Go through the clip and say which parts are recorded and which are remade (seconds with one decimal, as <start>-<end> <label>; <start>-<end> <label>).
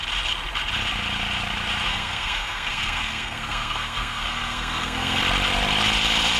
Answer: 0.0-1.9 recorded; 1.9-5.2 remade; 5.2-6.4 recorded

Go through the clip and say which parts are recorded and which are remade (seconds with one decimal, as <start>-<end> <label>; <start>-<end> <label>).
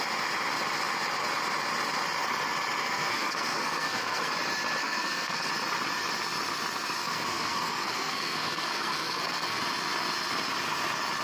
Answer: 0.0-2.8 recorded; 2.8-4.3 remade; 4.3-4.8 recorded; 4.8-5.5 remade; 5.5-7.0 recorded; 7.0-9.6 remade; 9.6-11.2 recorded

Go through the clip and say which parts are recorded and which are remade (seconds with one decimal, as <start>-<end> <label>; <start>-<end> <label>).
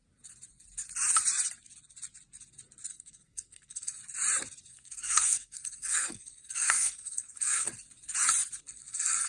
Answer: 0.0-2.9 recorded; 2.9-4.0 remade; 4.0-4.7 recorded; 4.7-7.7 remade; 7.7-8.6 recorded; 8.6-9.3 remade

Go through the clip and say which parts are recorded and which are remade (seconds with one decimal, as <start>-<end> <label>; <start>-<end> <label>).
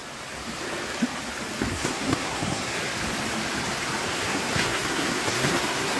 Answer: 0.0-1.7 recorded; 1.7-2.8 remade; 2.8-4.1 recorded; 4.1-6.0 remade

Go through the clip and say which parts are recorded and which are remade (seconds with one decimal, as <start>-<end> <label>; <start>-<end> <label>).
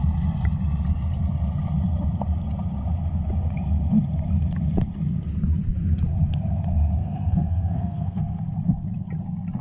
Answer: 0.0-7.0 recorded; 7.0-8.4 remade; 8.4-9.6 recorded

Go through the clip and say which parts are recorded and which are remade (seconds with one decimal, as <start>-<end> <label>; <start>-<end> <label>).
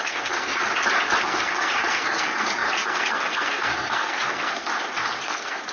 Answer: 0.0-0.7 remade; 0.7-1.2 recorded; 1.2-4.7 remade; 4.7-5.2 recorded; 5.2-5.7 remade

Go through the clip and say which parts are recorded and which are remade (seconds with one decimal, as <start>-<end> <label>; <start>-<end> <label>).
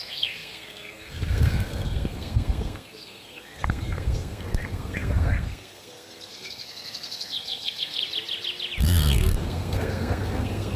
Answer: 0.0-8.0 remade; 8.0-8.8 recorded; 8.8-10.8 remade